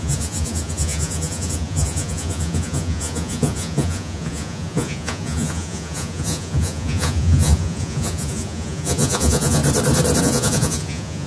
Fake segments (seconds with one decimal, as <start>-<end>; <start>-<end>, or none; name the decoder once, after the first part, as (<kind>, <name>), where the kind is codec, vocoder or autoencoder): 0.0-9.6 (vocoder, Vocos); 10.2-11.3